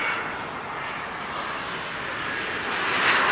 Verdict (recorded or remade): recorded